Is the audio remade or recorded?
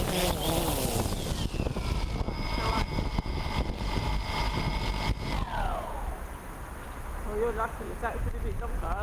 recorded